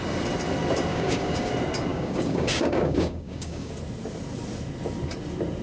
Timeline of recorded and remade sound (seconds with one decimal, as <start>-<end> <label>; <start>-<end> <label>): 0.0-0.9 recorded; 0.9-1.5 remade; 1.5-1.9 recorded; 1.9-3.7 remade; 3.7-5.6 recorded